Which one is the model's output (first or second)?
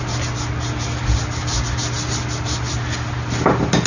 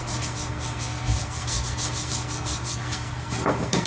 second